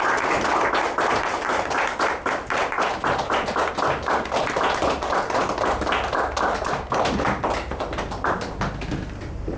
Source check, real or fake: real